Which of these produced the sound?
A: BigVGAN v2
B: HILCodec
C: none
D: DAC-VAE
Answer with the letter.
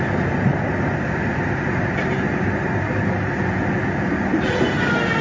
C